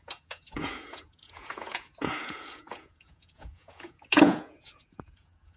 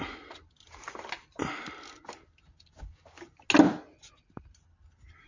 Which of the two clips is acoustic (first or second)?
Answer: second